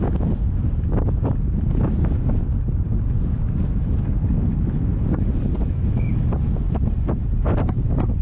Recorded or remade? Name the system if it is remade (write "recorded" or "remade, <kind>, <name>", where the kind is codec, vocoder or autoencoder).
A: recorded